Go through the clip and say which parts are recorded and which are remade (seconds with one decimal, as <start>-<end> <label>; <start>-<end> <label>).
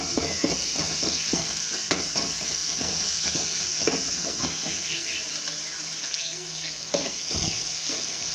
0.0-5.1 remade; 5.1-6.0 recorded; 6.0-8.3 remade